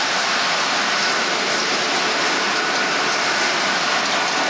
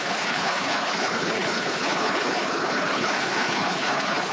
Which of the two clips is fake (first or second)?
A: second